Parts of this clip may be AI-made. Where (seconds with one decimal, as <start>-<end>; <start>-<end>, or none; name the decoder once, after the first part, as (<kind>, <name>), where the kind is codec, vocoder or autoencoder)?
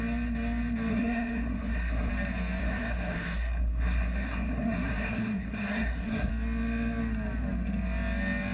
0.9-2.1 (codec, SNAC); 2.6-6.3